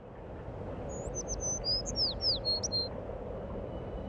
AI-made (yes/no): no